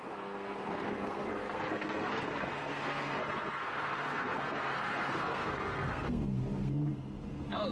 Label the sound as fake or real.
fake